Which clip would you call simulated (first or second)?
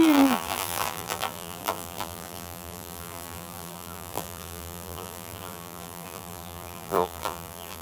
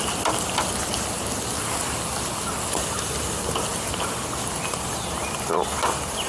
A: first